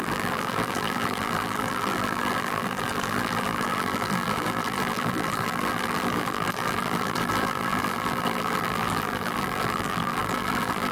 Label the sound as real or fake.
fake